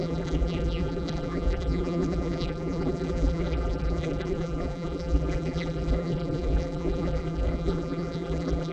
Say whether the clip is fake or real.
fake